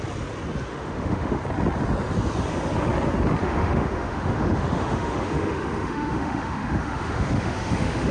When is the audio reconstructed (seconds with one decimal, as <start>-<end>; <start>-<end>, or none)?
0.7-1.4; 3.4-8.1